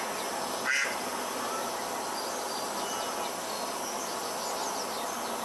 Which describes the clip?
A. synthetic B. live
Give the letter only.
B